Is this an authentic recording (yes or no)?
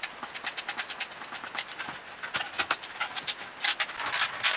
yes